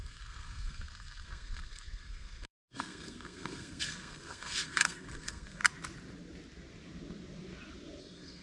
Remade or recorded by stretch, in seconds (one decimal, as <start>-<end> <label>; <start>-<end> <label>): 0.0-5.6 remade; 5.6-8.0 recorded; 8.0-8.4 remade